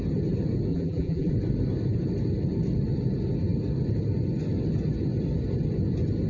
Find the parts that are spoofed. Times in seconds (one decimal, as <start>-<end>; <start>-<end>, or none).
0.7-1.3